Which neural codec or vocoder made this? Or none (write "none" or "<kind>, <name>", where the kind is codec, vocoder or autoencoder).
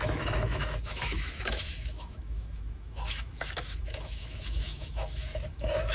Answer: autoencoder, DAC-VAE